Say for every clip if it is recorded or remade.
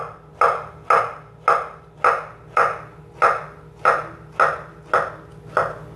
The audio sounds recorded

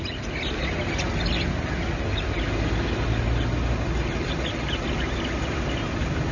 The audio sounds recorded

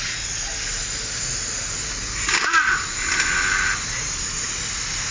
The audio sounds recorded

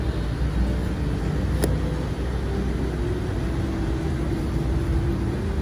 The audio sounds recorded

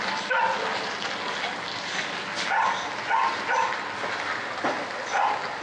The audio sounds recorded